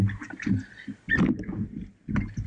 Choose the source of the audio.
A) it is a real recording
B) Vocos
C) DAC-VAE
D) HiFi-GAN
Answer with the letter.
A